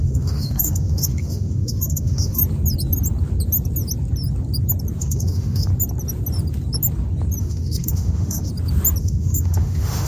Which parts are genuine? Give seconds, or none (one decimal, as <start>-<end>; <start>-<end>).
2.4-5.0; 5.7-7.4; 8.5-9.0